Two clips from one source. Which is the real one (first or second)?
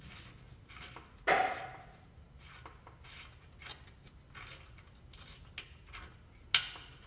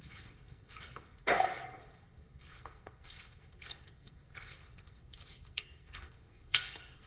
first